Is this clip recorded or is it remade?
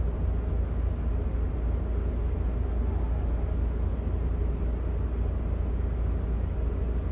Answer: recorded